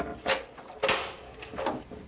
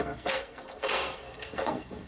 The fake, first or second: second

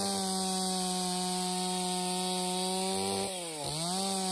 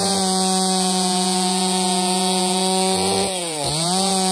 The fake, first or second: second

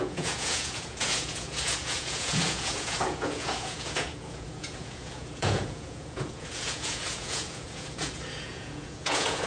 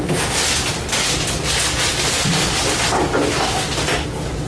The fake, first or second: first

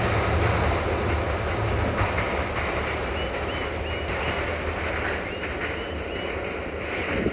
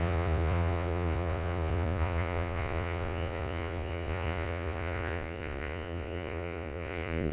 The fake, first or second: second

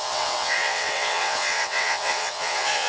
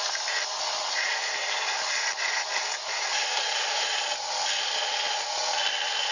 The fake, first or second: first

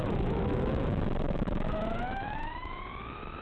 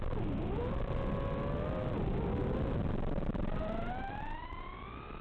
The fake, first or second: first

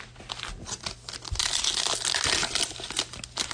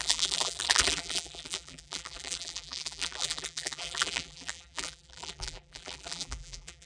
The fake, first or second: second